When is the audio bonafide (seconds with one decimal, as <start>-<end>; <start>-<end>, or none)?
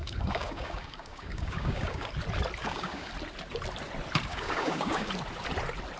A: 2.1-2.6; 3.1-4.3; 5.1-6.0